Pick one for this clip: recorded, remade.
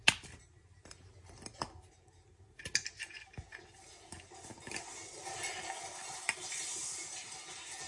recorded